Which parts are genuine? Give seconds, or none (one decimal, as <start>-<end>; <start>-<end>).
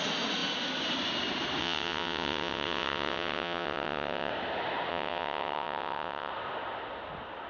0.0-1.6; 4.3-4.9; 6.3-7.5